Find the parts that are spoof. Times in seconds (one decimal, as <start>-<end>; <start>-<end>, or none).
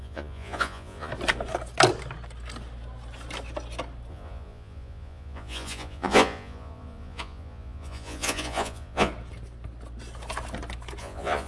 0.0-1.1; 4.1-9.1; 11.0-11.5